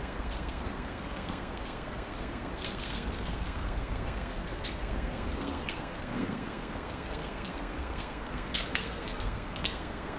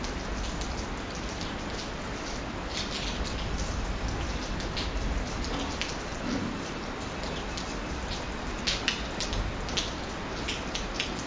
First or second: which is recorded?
second